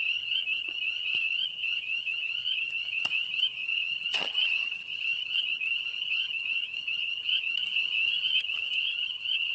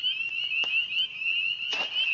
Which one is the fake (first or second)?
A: first